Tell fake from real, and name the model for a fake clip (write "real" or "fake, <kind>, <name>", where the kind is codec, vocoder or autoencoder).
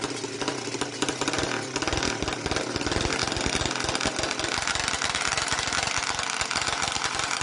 real